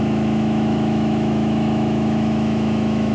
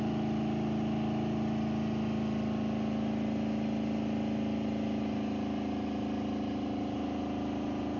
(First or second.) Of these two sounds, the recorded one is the second